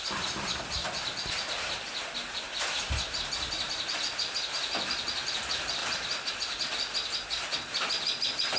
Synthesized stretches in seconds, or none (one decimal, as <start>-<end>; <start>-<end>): 5.8-6.3